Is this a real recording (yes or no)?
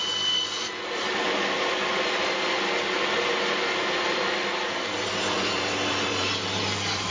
yes